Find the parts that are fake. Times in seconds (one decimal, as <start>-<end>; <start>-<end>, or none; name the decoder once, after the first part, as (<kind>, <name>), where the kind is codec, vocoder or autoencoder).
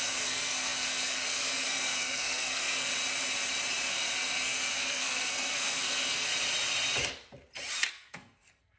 0.0-2.9 (codec, SNAC); 3.9-6.3; 7.9-8.8